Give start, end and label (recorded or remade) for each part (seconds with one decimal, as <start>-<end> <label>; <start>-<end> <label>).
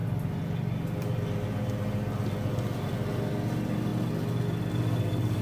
0.0-2.9 recorded; 2.9-3.9 remade; 3.9-5.4 recorded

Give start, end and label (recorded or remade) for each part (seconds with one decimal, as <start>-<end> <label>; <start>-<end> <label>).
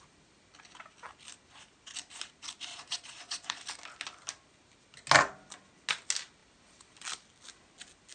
0.0-2.7 recorded; 2.7-3.6 remade; 3.6-8.1 recorded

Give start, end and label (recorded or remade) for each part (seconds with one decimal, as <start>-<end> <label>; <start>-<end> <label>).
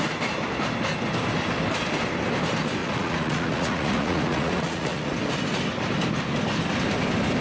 0.0-2.8 recorded; 2.8-5.1 remade; 5.1-7.4 recorded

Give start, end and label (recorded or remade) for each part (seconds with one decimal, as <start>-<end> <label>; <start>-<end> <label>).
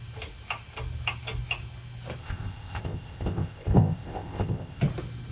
0.0-2.2 recorded; 2.2-4.8 remade; 4.8-5.3 recorded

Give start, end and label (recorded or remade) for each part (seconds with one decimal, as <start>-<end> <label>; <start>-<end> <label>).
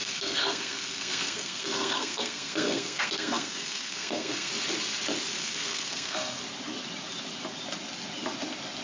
0.0-4.5 remade; 4.5-5.4 recorded; 5.4-6.4 remade; 6.4-8.8 recorded